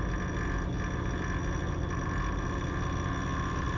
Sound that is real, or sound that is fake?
real